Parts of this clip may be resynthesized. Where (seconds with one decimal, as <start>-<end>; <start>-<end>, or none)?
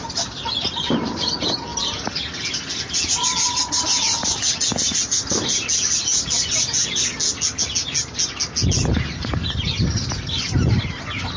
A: none